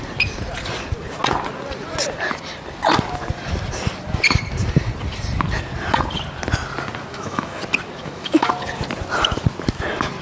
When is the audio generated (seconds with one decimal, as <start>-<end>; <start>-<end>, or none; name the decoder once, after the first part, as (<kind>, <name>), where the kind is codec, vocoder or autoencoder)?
7.1-7.6 (autoencoder, DAC-VAE); 8.0-8.5